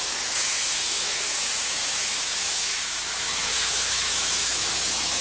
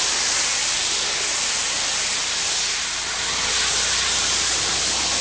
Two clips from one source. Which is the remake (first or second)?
first